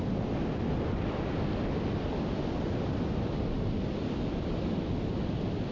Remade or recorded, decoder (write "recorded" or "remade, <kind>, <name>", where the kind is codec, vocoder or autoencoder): recorded